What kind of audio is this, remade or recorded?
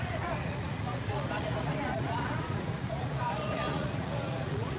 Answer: remade